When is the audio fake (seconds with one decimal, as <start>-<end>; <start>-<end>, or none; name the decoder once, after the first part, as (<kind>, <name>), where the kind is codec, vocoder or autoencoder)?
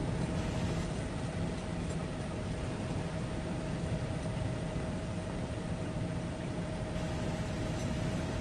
1.7-6.7 (vocoder, BigVGAN v2); 7.8-8.4